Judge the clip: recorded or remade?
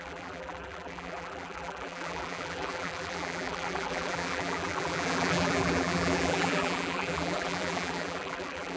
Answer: remade